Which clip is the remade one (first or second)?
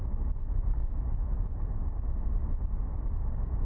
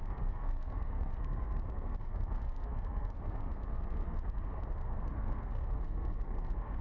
second